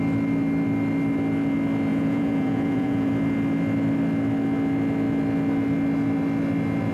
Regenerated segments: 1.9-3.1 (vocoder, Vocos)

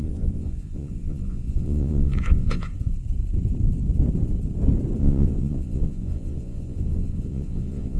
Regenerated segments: 0.0-2.7 (vocoder, Vocos); 5.0-8.0

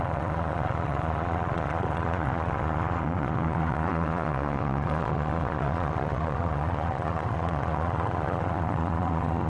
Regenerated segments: 0.0-9.5 (vocoder, Vocos)

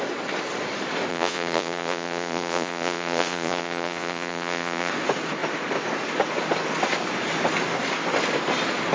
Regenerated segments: 1.1-4.9 (vocoder, Vocos)